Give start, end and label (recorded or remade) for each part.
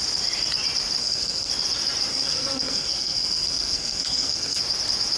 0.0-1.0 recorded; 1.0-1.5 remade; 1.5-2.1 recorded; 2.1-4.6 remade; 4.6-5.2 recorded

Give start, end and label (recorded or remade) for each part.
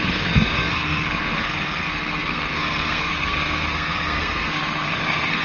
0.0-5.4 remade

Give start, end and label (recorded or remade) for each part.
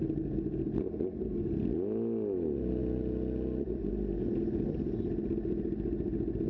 0.0-6.5 recorded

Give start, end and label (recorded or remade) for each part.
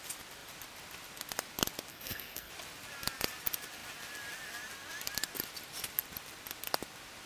0.0-1.9 recorded; 1.9-2.5 remade; 2.5-7.3 recorded